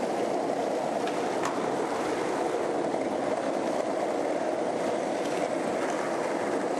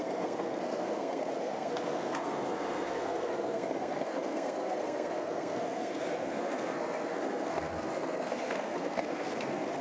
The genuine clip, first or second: first